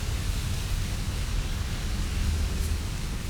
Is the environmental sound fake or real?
fake